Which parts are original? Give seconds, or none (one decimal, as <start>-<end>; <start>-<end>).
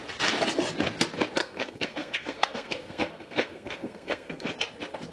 0.0-1.4; 4.5-5.1